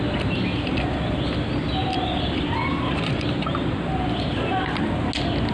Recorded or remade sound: recorded